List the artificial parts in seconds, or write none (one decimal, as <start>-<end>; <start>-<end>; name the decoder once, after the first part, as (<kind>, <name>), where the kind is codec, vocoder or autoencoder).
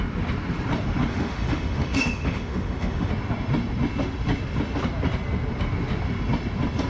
1.1-3.1 (autoencoder, DAC-VAE)